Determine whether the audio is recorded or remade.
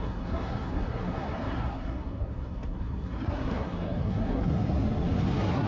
remade